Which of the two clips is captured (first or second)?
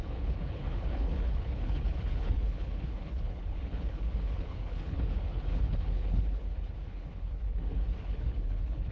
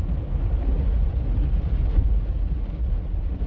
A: second